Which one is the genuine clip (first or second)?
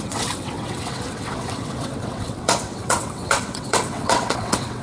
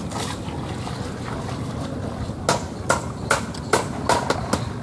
second